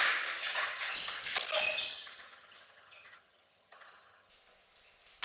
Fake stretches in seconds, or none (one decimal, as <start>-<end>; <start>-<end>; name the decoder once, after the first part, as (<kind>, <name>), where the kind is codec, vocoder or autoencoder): 0.4-0.9 (vocoder, HiFi-GAN); 1.9-4.3